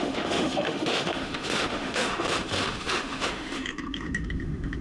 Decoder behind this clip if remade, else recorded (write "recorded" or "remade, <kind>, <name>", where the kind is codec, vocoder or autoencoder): remade, autoencoder, DAC-VAE